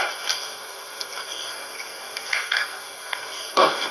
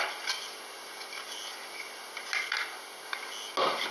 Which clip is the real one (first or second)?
second